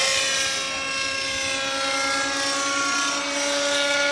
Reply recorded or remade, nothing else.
recorded